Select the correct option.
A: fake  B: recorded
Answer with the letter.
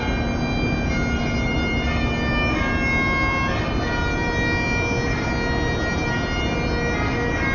B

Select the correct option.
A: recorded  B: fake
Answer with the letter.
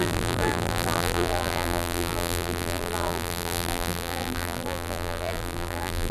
B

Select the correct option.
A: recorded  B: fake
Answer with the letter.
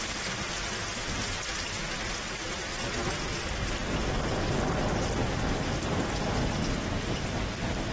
A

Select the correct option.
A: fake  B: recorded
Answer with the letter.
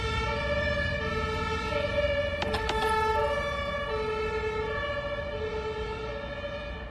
B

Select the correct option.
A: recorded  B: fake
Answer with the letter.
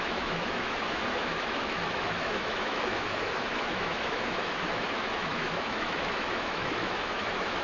B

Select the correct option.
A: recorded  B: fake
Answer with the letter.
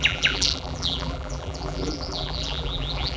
B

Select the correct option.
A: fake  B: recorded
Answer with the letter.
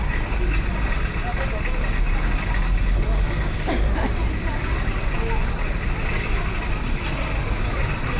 B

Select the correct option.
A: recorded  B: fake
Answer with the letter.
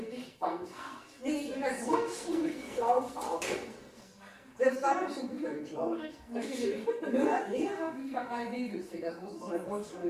B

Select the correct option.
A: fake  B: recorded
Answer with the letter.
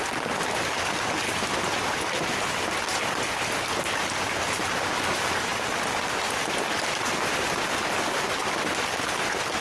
B